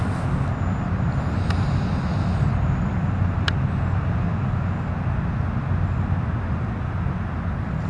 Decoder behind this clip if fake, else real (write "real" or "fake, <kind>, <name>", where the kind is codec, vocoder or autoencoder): real